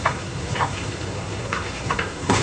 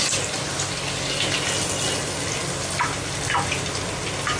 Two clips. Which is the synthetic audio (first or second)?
first